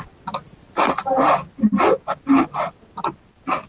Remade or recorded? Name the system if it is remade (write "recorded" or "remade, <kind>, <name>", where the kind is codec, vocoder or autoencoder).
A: recorded